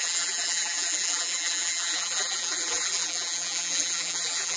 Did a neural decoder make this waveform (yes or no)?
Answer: yes